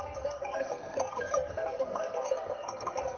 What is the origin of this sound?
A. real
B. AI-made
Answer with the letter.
B